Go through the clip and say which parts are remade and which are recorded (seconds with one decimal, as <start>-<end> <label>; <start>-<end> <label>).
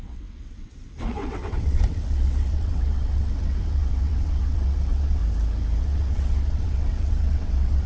0.0-5.2 remade; 5.2-5.8 recorded; 5.8-7.9 remade